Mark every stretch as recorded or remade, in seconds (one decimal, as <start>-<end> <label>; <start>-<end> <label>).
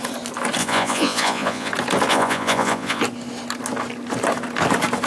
0.0-0.6 recorded; 0.6-1.7 remade; 1.7-2.1 recorded; 2.1-3.0 remade; 3.0-5.1 recorded